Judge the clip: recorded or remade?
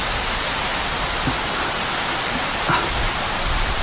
recorded